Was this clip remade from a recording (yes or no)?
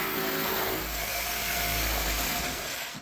yes